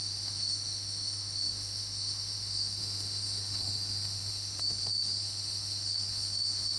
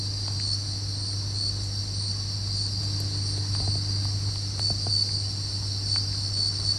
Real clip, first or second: second